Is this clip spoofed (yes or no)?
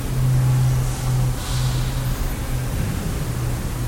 no